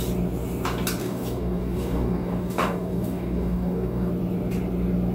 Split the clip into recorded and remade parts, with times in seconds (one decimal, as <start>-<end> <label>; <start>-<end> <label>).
0.0-1.0 recorded; 1.0-4.1 remade; 4.1-5.1 recorded